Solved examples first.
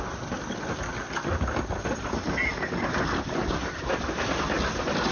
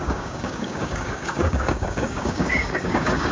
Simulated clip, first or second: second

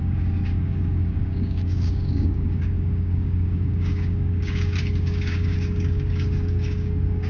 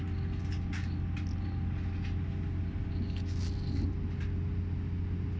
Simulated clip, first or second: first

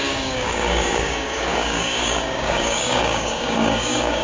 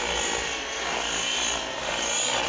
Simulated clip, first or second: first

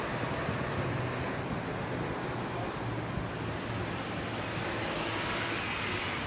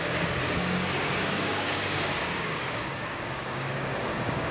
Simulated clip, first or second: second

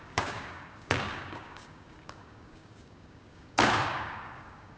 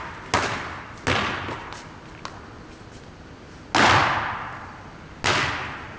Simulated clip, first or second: first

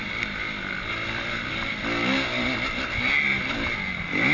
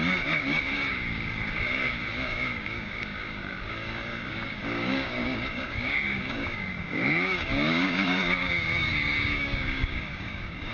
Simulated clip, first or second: second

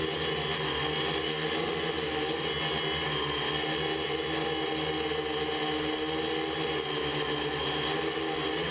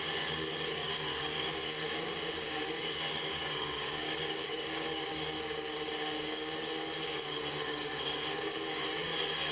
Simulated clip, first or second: second